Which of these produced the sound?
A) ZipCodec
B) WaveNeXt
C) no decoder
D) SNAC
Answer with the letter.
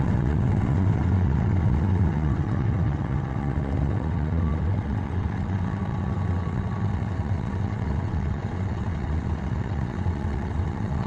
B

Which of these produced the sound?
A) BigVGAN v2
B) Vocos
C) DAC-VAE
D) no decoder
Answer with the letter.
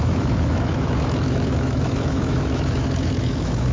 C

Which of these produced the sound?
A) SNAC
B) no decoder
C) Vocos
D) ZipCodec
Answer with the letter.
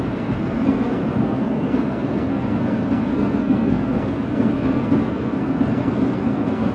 A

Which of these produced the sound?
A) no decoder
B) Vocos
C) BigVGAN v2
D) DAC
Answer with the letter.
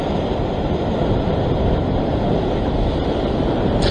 A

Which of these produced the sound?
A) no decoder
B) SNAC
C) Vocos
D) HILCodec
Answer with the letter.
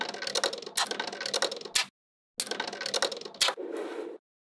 A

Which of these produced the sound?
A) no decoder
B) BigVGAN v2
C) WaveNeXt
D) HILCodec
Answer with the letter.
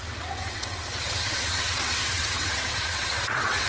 C